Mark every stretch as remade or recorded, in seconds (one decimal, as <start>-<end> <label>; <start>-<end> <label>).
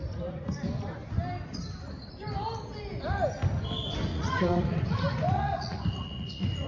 0.0-4.1 recorded; 4.1-6.7 remade